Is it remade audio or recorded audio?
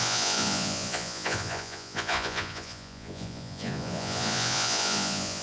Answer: remade